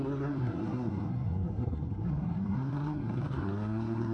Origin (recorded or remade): remade